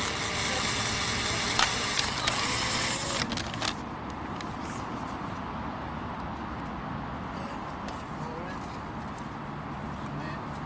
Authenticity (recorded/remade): recorded